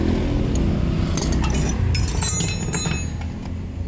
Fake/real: real